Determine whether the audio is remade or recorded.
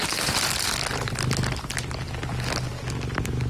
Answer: recorded